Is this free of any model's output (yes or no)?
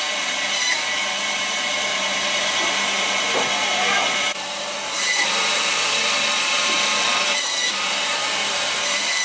no